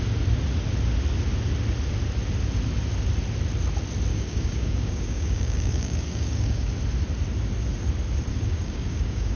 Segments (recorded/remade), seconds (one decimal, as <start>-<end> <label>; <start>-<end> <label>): 0.0-4.1 recorded; 4.1-6.7 remade; 6.7-8.3 recorded; 8.3-9.4 remade